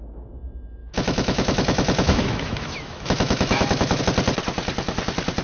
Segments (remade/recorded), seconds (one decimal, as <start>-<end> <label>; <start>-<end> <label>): 0.0-0.8 recorded; 0.8-4.0 remade; 4.0-5.4 recorded